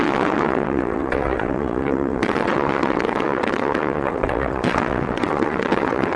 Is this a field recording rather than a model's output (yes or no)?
no